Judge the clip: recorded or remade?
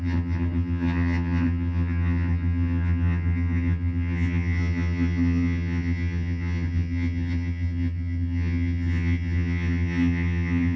remade